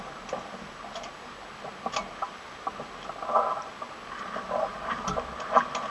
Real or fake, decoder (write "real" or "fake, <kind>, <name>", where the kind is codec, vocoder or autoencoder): real